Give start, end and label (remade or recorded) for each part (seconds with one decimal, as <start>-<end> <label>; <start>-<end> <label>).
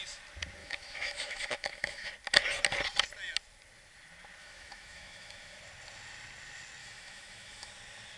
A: 0.0-0.6 recorded; 0.6-2.1 remade; 2.1-4.4 recorded; 4.4-5.6 remade; 5.6-6.8 recorded; 6.8-7.7 remade; 7.7-8.2 recorded